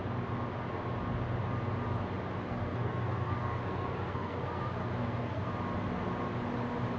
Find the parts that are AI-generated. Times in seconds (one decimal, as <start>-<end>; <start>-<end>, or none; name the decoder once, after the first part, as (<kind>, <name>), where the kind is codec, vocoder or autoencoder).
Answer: 2.4-5.5 (codec, SNAC)